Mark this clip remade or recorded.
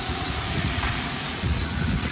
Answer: remade